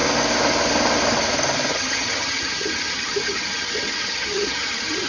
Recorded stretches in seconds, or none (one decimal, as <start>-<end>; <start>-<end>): 0.0-1.7

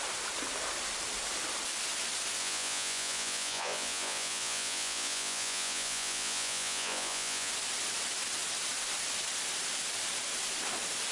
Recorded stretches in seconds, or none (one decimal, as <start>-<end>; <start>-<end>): 0.0-2.4; 7.5-11.1

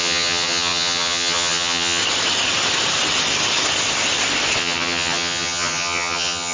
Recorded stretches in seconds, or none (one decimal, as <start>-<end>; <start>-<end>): 2.0-4.6

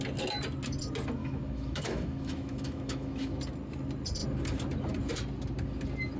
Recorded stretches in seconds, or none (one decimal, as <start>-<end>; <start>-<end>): 0.0-1.2; 3.4-6.2

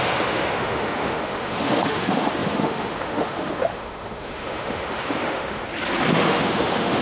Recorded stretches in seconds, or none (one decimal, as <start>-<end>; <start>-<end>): 5.6-6.1

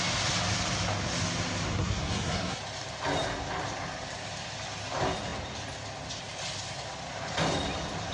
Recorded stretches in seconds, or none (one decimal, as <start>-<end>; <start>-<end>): 0.0-1.7; 2.6-8.1

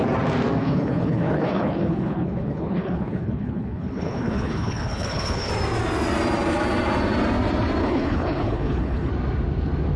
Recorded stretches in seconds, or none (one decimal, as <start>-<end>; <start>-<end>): 0.0-0.6; 5.5-7.8; 9.1-10.0